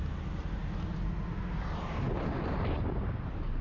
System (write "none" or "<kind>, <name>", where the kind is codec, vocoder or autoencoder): none